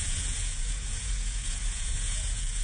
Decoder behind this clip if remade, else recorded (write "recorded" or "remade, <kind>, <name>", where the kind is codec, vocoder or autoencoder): remade, vocoder, Vocos